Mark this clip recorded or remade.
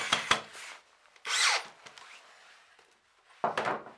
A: recorded